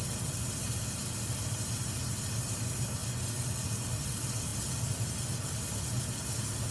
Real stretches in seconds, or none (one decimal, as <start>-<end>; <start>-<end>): 0.0-6.7